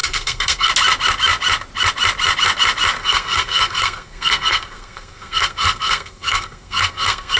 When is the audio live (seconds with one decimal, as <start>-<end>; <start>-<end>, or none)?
0.7-3.0